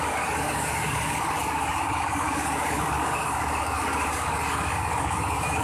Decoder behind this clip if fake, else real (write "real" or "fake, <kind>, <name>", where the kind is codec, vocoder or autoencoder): fake, codec, DAC